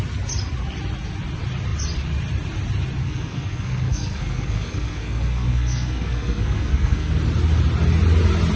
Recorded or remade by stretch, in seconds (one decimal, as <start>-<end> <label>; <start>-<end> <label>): 0.0-3.0 recorded; 3.0-7.1 remade; 7.1-8.6 recorded